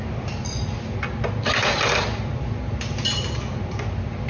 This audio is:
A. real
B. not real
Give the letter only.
A